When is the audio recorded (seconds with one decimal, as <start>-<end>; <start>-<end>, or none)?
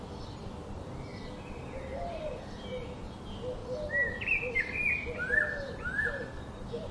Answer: 0.0-3.6; 4.5-6.9